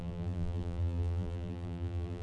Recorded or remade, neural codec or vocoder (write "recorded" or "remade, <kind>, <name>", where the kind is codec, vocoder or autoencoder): remade, vocoder, BigVGAN v2